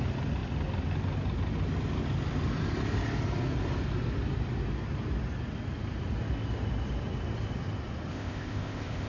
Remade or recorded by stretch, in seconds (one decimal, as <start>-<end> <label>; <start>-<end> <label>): 0.0-8.1 recorded; 8.1-9.1 remade